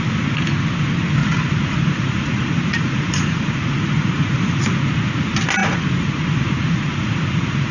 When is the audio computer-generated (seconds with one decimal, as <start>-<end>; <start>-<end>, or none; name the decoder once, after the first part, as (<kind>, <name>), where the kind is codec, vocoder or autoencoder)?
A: 1.2-4.4 (vocoder, Vocos); 5.6-7.7